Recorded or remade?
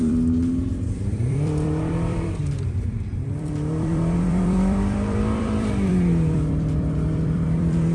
remade